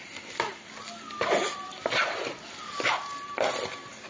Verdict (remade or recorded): recorded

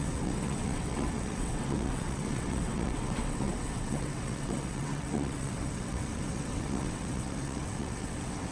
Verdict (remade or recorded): remade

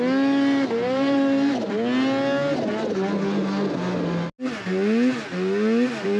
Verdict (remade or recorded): recorded